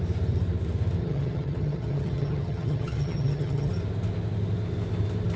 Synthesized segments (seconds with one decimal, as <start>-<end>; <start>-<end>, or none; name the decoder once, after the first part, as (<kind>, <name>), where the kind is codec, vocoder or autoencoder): 1.0-3.7 (vocoder, HiFi-GAN)